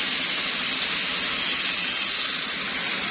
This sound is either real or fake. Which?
real